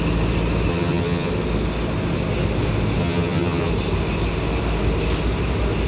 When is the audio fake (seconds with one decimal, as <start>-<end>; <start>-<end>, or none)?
0.7-1.3; 3.0-3.7